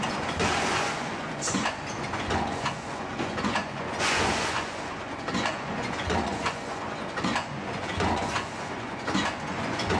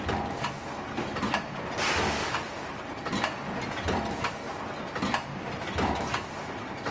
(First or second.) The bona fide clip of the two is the second